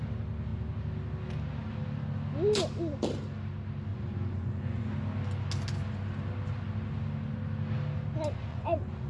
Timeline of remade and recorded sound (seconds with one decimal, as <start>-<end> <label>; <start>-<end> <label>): 0.0-3.9 recorded; 3.9-4.9 remade; 4.9-8.5 recorded; 8.5-9.1 remade